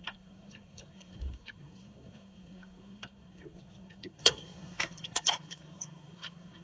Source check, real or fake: fake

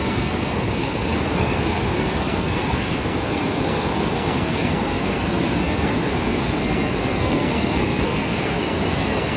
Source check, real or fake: fake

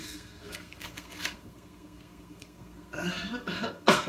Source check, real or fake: fake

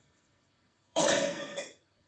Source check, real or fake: fake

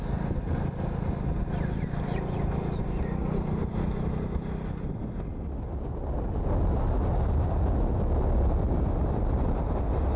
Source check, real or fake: real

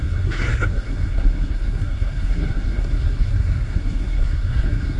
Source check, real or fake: fake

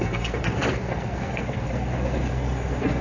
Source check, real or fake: fake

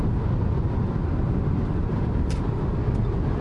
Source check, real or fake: real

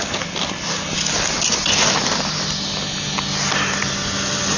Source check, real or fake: real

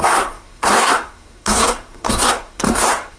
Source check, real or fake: fake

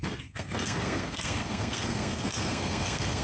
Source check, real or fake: fake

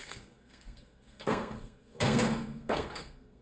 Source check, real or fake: fake